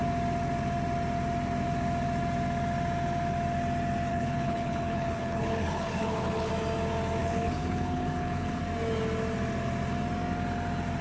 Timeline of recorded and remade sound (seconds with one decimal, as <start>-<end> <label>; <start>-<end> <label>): 0.0-4.1 recorded; 4.1-6.5 remade; 6.5-7.2 recorded; 7.2-8.6 remade; 8.6-11.0 recorded